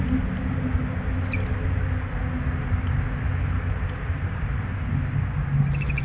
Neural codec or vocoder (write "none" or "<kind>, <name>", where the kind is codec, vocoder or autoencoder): none